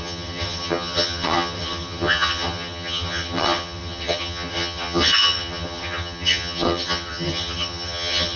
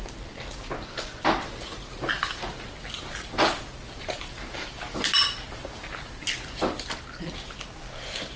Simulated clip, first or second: first